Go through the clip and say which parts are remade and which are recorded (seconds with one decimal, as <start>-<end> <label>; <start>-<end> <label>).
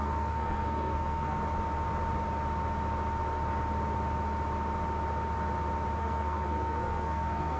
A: 0.0-1.4 remade; 1.4-6.0 recorded; 6.0-7.6 remade